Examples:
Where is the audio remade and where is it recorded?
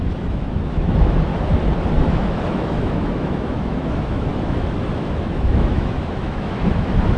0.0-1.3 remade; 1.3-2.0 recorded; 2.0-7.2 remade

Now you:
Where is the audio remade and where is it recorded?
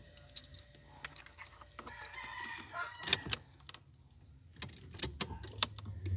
0.0-6.2 recorded